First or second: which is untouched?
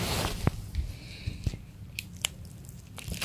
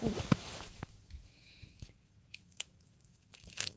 first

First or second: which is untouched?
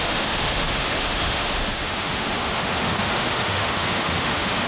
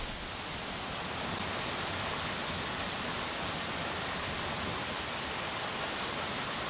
second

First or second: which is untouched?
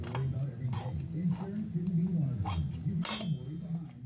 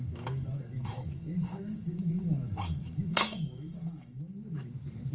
first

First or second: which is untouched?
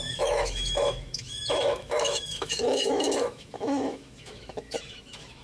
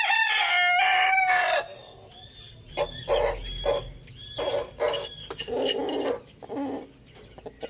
second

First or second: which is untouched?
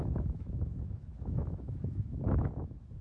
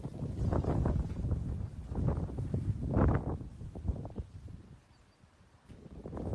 second